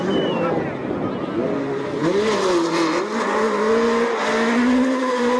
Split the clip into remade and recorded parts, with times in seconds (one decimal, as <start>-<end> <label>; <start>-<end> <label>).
0.0-5.4 recorded